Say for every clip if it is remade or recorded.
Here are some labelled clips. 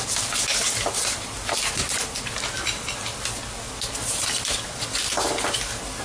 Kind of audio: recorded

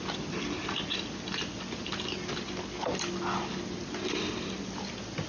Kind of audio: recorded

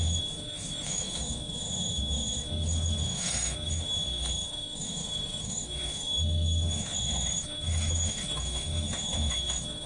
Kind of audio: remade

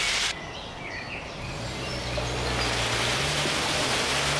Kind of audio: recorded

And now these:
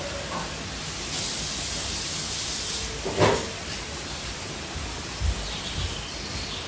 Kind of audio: recorded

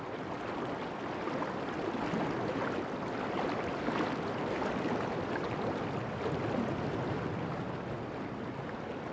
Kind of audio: recorded